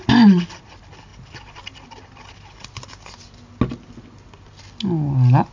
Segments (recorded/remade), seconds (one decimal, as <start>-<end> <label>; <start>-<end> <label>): 0.0-5.5 recorded